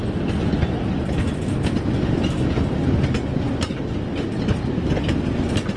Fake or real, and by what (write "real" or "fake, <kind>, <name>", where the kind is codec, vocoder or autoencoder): real